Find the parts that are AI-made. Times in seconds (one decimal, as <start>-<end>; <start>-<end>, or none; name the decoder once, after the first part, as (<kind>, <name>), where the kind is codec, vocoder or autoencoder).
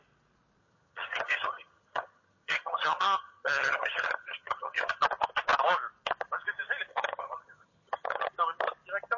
0.6-5.0 (vocoder, HiFi-GAN); 6.9-8.3